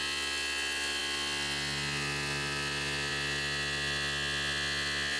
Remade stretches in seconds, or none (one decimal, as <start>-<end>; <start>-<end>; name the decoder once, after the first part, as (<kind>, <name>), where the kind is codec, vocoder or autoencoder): none